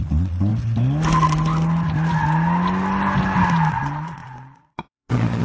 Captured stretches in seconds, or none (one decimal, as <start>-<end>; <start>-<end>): 0.5-3.7